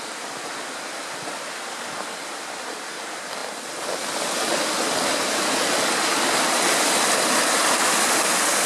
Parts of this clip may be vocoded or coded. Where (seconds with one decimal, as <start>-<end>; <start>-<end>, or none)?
none